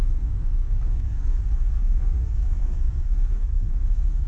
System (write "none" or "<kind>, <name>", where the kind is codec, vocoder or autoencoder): codec, SNAC